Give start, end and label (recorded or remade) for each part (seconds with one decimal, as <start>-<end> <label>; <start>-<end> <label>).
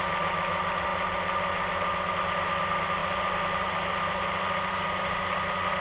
0.0-5.8 recorded